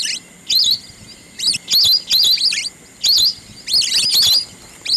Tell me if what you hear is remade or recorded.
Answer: recorded